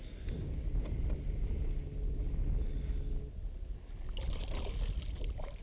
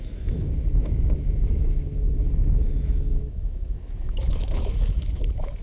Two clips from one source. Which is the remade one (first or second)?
second